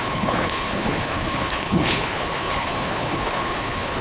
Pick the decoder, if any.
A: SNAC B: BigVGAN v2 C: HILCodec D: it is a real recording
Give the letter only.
C